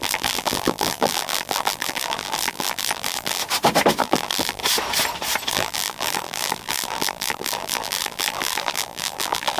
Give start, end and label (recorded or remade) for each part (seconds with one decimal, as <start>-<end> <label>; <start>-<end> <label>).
0.0-3.4 remade; 3.4-4.0 recorded; 4.0-4.6 remade; 4.6-5.5 recorded; 5.5-9.6 remade